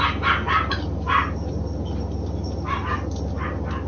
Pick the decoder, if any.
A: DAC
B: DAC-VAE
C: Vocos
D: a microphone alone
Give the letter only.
D